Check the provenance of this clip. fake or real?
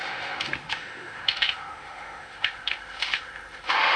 fake